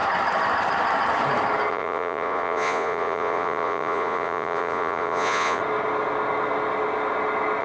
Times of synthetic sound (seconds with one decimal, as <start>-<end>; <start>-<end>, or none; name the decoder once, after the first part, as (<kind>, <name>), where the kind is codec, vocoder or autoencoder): 1.7-5.6 (vocoder, Vocos)